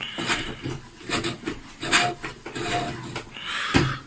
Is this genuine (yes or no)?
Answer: yes